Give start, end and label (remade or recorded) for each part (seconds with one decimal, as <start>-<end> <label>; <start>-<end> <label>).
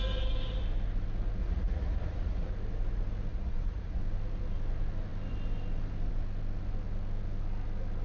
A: 0.0-1.4 recorded; 1.4-2.5 remade; 2.5-3.3 recorded; 3.3-4.0 remade; 4.0-8.0 recorded